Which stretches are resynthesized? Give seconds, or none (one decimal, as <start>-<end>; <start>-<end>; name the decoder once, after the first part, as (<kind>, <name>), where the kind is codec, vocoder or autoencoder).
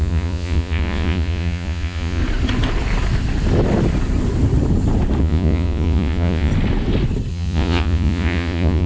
0.0-2.2 (vocoder, Vocos); 5.2-6.5; 7.3-8.9